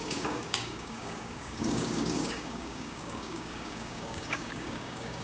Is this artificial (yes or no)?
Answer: yes